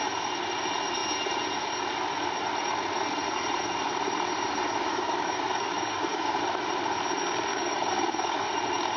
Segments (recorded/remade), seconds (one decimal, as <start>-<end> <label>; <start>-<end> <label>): 0.0-4.9 recorded; 4.9-6.4 remade; 6.4-7.5 recorded; 7.5-8.5 remade; 8.5-9.0 recorded